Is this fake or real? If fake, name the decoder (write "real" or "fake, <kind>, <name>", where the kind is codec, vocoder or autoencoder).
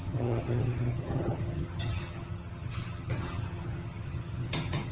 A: fake, vocoder, HiFi-GAN